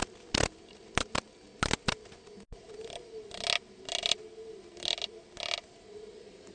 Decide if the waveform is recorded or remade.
recorded